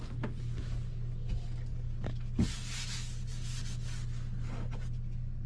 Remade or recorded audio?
recorded